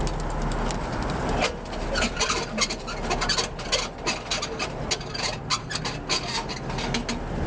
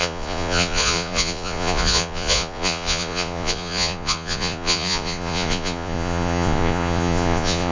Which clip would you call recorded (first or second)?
first